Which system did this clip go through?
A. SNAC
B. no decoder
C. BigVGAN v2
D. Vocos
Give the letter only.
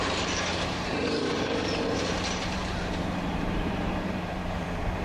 C